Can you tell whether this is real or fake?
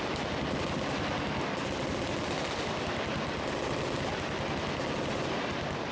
real